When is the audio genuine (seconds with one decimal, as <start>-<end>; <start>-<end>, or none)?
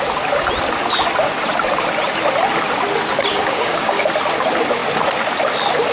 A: 0.0-3.3; 4.0-5.9